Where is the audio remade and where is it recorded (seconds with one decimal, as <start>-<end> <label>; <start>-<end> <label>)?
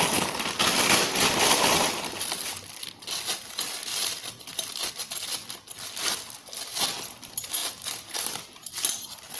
0.0-9.4 recorded